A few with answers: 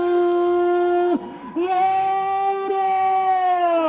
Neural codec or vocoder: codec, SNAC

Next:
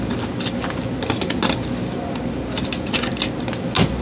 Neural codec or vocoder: none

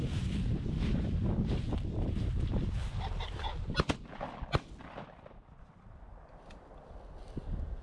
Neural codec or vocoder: none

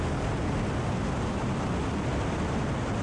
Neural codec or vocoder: vocoder, BigVGAN v2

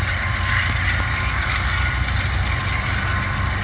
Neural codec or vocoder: none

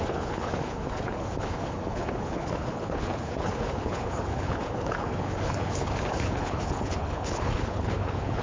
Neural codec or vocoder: codec, HILCodec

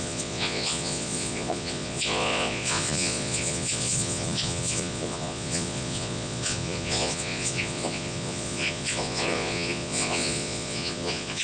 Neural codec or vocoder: vocoder, Vocos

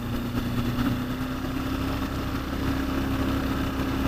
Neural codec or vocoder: none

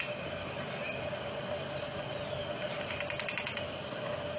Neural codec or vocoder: none